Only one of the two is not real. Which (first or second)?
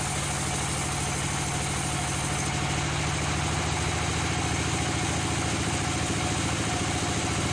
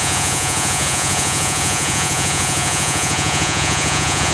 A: second